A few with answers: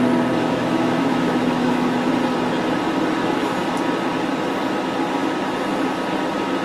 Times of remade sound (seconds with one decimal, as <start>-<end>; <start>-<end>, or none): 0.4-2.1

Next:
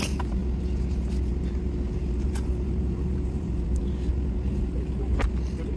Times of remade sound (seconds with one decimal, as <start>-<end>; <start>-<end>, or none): 0.0-0.4; 1.3-3.8

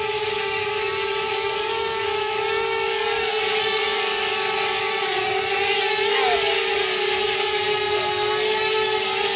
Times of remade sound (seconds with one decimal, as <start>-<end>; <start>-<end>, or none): 0.0-9.4

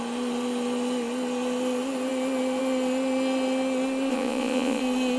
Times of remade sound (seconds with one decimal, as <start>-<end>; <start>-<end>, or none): 4.1-4.8